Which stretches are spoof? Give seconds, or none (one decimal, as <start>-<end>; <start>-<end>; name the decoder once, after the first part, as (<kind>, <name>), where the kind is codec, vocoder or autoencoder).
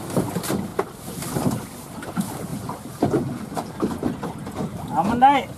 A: 0.7-1.6 (vocoder, BigVGAN v2); 2.5-4.1